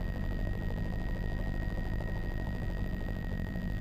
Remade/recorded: remade